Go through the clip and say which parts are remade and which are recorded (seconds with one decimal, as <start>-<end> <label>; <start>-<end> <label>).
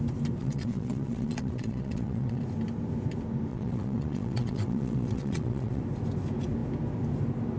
0.0-0.4 recorded; 0.4-2.4 remade; 2.4-3.5 recorded; 3.5-5.8 remade; 5.8-7.6 recorded